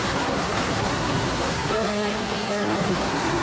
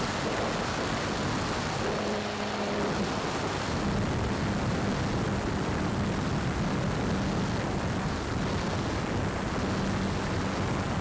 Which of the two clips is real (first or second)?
second